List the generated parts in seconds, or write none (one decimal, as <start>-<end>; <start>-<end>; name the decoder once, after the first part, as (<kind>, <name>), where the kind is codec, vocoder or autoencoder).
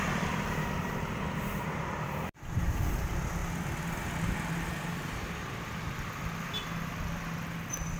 0.0-3.4 (vocoder, BigVGAN v2)